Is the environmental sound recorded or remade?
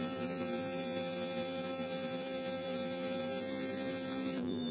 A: remade